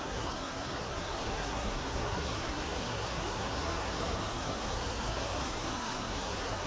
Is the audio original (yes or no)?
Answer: no